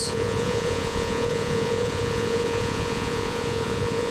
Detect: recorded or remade remade